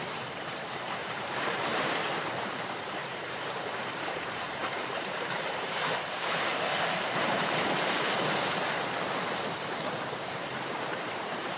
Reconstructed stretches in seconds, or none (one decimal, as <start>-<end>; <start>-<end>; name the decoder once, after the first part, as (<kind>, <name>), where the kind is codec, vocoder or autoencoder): 0.0-6.5 (vocoder, BigVGAN v2); 10.2-11.6